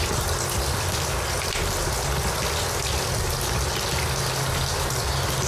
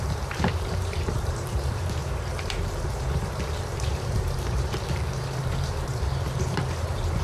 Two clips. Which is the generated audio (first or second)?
second